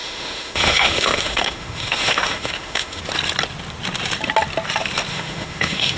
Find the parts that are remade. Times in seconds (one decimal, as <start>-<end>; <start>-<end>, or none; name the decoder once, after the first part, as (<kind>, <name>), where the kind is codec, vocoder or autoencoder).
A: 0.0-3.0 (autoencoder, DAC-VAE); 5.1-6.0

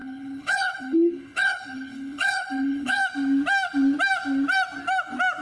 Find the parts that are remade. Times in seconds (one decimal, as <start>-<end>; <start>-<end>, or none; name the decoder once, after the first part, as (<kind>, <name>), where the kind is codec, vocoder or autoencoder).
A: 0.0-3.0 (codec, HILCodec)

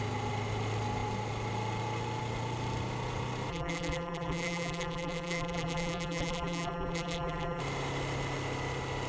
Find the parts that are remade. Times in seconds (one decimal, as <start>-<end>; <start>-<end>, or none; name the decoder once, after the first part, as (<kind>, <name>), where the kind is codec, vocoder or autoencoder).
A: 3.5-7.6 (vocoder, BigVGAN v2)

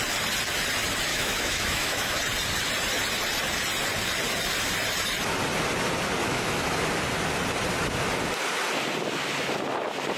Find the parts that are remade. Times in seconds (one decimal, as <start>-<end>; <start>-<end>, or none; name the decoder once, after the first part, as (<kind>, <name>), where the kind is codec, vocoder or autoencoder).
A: 1.1-2.2 (autoencoder, DAC-VAE); 6.2-6.8

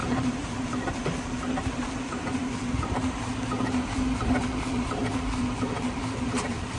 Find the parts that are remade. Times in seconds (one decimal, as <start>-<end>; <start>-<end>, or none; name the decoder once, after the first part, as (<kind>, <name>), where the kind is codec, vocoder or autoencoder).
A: 0.0-3.3 (vocoder, BigVGAN v2); 3.9-6.8

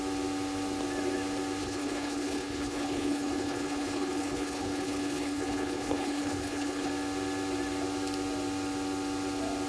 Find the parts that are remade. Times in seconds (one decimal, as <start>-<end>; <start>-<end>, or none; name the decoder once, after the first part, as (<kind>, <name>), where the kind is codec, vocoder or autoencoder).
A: 1.6-6.9 (codec, HILCodec)